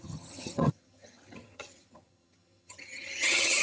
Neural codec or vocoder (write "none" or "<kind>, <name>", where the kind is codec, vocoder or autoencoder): vocoder, HiFi-GAN